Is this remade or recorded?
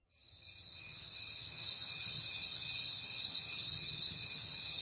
remade